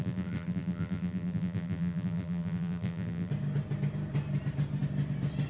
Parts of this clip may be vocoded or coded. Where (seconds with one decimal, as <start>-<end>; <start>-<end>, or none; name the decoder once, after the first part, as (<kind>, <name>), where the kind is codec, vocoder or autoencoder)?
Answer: 0.0-3.3 (vocoder, BigVGAN v2)

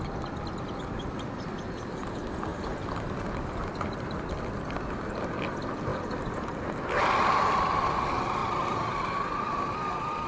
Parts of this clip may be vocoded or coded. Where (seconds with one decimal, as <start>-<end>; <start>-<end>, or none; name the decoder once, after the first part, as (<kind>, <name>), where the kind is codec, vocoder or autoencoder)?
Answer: 2.5-4.1 (vocoder, BigVGAN v2)

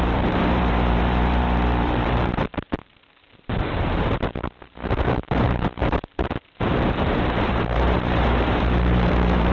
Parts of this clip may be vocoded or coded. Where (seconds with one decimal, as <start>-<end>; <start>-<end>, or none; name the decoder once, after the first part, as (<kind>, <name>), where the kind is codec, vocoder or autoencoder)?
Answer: 0.0-9.5 (vocoder, BigVGAN v2)

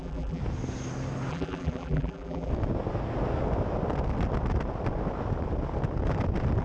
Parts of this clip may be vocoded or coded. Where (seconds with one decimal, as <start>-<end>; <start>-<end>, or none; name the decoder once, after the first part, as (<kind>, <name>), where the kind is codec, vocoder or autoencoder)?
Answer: 0.0-0.4 (vocoder, BigVGAN v2); 1.3-2.5

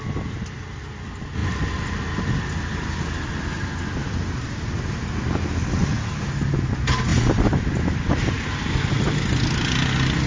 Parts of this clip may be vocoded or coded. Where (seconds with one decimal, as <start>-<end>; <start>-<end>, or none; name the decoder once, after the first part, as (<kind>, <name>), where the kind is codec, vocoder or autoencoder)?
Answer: 1.4-2.2 (vocoder, BigVGAN v2); 4.0-4.9

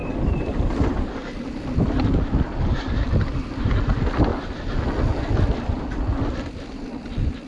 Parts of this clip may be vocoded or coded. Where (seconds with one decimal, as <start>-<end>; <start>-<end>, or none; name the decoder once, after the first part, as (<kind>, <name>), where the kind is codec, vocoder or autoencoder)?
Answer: 0.0-4.3 (vocoder, BigVGAN v2); 5.3-7.5